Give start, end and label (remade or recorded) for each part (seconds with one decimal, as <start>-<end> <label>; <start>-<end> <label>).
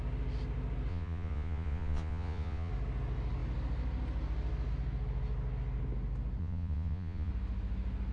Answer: 0.0-0.9 recorded; 0.9-2.7 remade; 2.7-6.4 recorded; 6.4-7.3 remade; 7.3-8.1 recorded